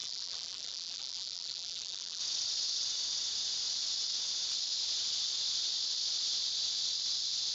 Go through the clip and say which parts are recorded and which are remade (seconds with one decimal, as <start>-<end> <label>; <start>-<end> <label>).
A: 0.0-2.2 remade; 2.2-7.5 recorded